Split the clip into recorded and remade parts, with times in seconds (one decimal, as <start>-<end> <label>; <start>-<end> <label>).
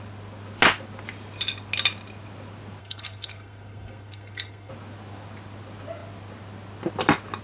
0.0-2.8 recorded; 2.8-4.7 remade; 4.7-7.4 recorded